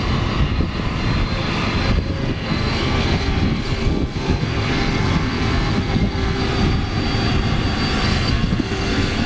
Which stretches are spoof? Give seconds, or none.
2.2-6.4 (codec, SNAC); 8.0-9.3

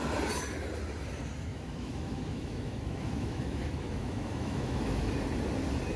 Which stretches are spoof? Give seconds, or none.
1.5-5.1 (autoencoder, DAC-VAE)